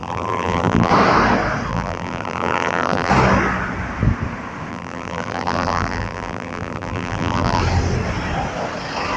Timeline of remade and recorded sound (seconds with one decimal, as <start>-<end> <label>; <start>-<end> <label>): 0.0-0.9 remade; 0.9-1.7 recorded; 1.7-3.1 remade; 3.1-4.7 recorded; 4.7-7.6 remade; 7.6-9.2 recorded